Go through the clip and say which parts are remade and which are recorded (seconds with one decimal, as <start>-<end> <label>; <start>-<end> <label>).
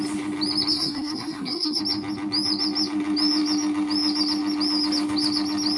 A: 0.0-0.7 recorded; 0.7-1.8 remade; 1.8-5.8 recorded